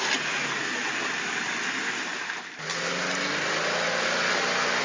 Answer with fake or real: real